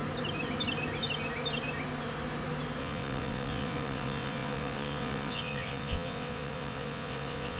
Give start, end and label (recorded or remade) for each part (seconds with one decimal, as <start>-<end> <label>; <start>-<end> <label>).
0.0-2.8 recorded; 2.8-7.6 remade